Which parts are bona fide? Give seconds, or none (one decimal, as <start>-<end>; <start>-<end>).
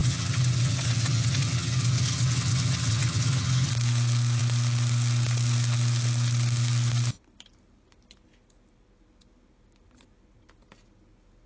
3.7-11.5